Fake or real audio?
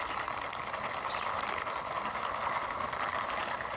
real